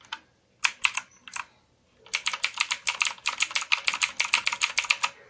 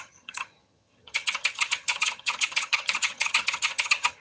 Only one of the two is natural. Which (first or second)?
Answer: first